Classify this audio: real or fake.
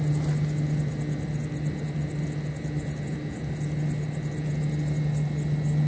real